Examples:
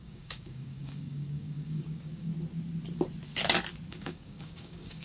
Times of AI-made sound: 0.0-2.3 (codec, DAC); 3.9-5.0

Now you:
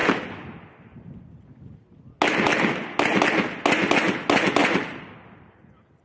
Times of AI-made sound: 4.6-6.0 (vocoder, BigVGAN v2)

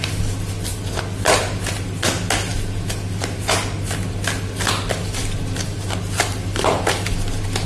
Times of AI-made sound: none

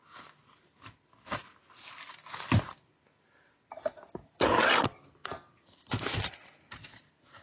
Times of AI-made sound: 5.2-7.4 (vocoder, BigVGAN v2)

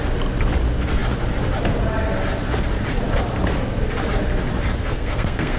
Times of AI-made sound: 4.8-5.6 (codec, SNAC)

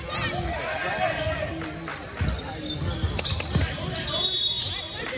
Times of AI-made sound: none